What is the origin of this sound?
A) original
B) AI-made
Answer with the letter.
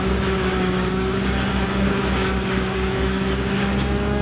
B